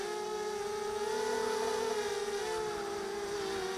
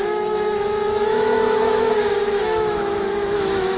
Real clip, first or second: first